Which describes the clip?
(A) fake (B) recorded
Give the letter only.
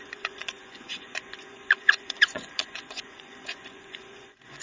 A